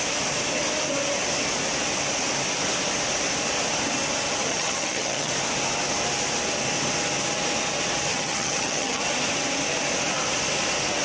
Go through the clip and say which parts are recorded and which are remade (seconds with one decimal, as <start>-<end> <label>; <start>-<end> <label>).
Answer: 0.0-4.5 recorded; 4.5-5.3 remade; 5.3-8.1 recorded; 8.1-9.0 remade; 9.0-11.0 recorded